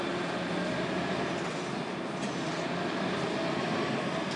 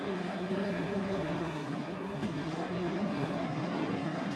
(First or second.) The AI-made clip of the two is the second